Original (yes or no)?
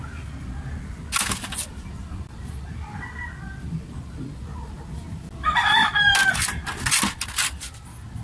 yes